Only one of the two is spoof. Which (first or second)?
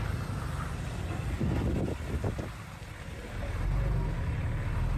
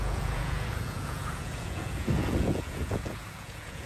second